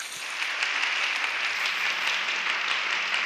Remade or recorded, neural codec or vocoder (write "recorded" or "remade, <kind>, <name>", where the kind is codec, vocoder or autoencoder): recorded